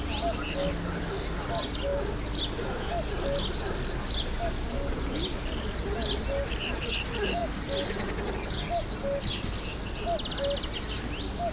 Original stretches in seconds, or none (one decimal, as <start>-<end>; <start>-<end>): 0.0-11.5